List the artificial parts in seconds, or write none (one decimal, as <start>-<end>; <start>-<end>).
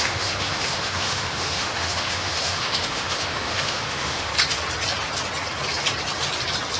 0.0-4.3